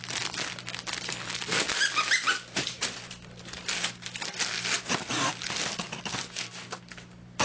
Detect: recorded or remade recorded